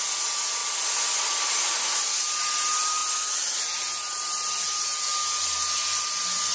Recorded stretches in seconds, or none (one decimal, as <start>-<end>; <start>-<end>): 0.0-6.5